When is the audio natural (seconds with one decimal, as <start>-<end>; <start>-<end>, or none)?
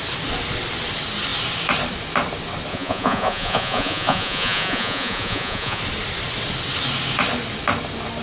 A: 0.0-2.7; 5.8-8.2